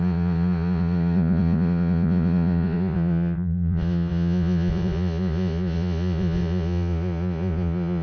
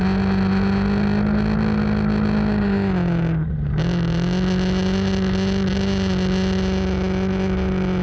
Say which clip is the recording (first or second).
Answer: second